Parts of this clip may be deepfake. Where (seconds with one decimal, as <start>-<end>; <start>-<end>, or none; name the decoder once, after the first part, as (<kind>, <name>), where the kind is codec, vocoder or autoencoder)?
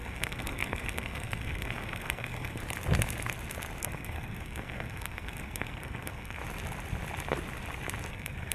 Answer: 0.0-2.6 (codec, SNAC); 3.8-6.4; 8.1-8.5